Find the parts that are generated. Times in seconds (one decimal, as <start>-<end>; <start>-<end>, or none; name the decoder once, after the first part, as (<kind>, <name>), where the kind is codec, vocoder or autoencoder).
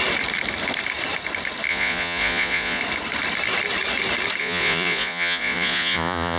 1.7-2.8 (vocoder, Vocos); 4.4-6.4